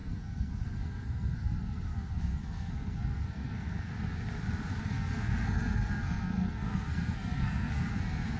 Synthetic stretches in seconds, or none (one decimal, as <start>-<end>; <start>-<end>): 0.0-3.9; 4.8-8.4